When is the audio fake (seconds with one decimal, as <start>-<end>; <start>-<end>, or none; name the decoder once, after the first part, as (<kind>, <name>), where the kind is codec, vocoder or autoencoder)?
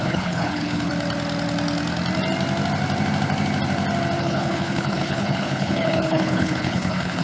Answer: 0.0-0.9 (codec, HILCodec); 4.2-7.2